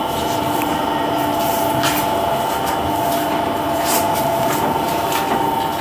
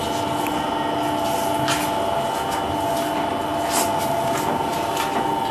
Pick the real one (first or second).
second